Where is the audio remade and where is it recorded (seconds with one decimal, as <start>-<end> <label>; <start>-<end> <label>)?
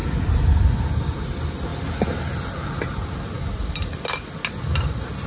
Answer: 0.0-5.3 recorded